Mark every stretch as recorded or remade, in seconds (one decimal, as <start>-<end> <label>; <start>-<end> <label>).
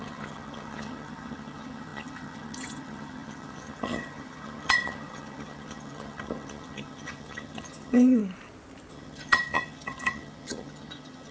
0.0-8.2 remade; 8.2-8.9 recorded; 8.9-11.3 remade